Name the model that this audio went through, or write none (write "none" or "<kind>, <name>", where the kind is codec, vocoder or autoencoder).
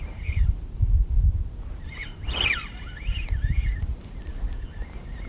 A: none